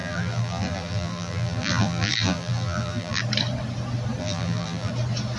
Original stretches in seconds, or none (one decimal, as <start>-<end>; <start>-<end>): 3.2-4.2; 4.9-5.4